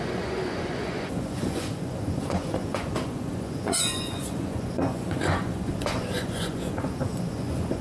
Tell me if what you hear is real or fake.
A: fake